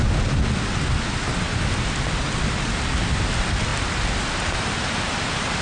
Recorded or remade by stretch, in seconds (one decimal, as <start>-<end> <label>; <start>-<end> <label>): 0.0-5.6 recorded